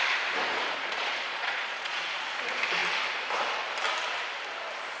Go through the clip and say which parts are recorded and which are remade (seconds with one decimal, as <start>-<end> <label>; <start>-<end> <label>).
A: 0.0-0.5 recorded; 0.5-2.4 remade; 2.4-5.0 recorded